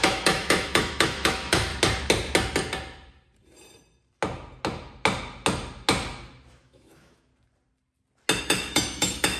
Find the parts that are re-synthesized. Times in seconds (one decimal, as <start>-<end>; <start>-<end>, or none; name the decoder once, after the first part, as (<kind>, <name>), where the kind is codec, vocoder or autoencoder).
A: 0.0-1.7 (autoencoder, DAC-VAE); 6.5-7.3; 8.4-9.4